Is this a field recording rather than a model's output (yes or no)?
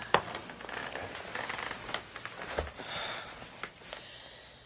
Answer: yes